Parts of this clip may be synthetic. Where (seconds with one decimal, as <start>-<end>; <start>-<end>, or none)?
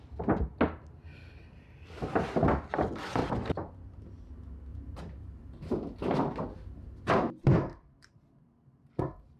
3.2-4.3; 4.7-9.0